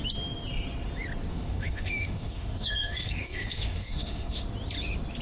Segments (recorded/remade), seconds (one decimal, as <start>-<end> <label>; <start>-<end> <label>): 0.0-1.3 recorded; 1.3-4.4 remade; 4.4-5.2 recorded

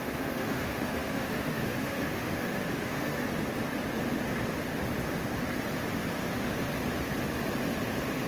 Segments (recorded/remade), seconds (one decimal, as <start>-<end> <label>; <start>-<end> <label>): 0.0-3.2 remade; 3.2-8.3 recorded

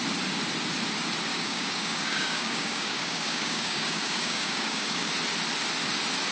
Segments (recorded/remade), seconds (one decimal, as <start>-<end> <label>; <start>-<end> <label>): 0.0-1.3 recorded; 1.3-5.1 remade; 5.1-6.3 recorded

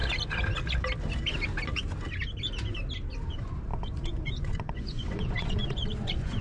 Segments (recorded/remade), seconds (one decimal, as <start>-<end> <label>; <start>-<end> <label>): 0.0-3.3 recorded; 3.3-6.4 remade